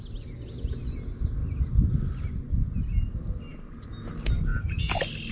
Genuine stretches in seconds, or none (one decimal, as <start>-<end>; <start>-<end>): 0.0-5.3